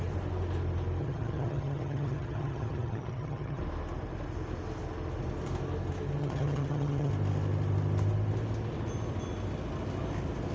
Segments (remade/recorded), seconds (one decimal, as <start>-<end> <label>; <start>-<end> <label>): 0.0-1.0 recorded; 1.0-3.6 remade; 3.6-6.2 recorded; 6.2-7.1 remade; 7.1-10.5 recorded